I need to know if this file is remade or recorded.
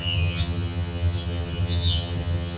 remade